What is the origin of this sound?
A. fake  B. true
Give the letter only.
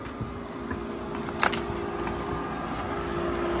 B